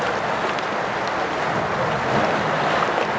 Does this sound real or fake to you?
real